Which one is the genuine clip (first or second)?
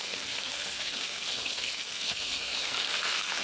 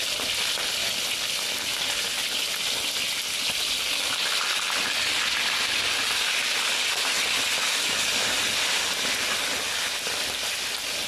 second